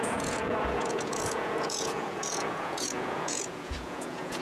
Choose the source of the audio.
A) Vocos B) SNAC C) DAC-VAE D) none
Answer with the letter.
A